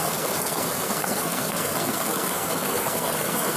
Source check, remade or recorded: remade